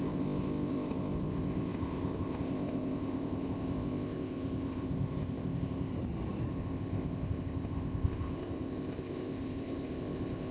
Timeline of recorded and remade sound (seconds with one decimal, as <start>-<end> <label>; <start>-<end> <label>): 0.0-5.9 remade; 5.9-6.5 recorded; 6.5-10.5 remade